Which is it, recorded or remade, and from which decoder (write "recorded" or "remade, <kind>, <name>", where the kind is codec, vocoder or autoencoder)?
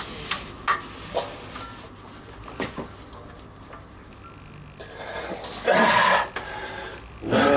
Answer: recorded